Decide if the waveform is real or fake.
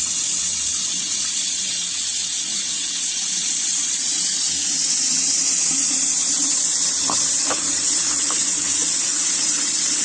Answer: fake